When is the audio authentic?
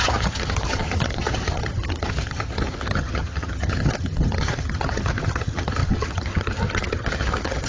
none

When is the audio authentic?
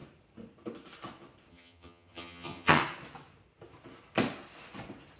0.0-1.5; 2.8-5.2